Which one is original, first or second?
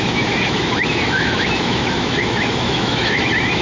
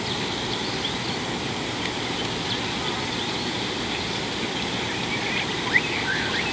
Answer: second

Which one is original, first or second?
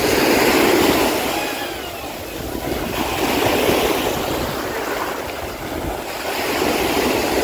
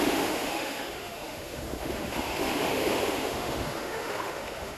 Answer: first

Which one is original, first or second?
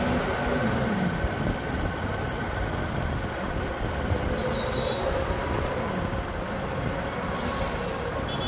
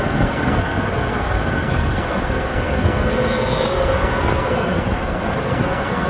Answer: first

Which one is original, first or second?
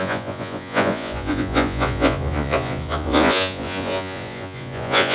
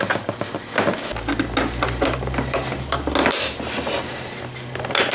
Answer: second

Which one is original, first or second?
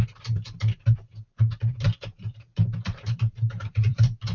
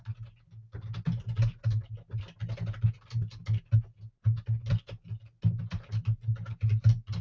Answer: second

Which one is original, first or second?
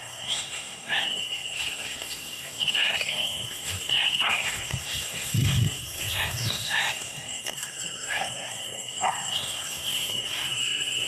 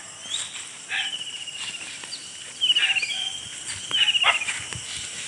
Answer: second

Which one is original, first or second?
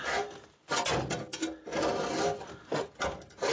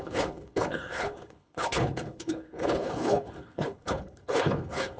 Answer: first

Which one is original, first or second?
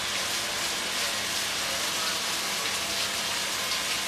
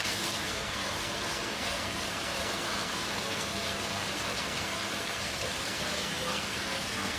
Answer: first